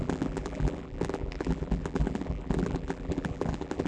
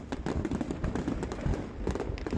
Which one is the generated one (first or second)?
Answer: first